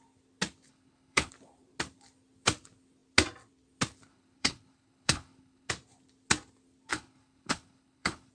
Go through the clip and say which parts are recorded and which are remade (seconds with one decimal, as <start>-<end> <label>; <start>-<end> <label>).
0.0-0.7 recorded; 0.7-1.3 remade; 1.3-4.1 recorded; 4.1-5.7 remade; 5.7-6.9 recorded; 6.9-8.3 remade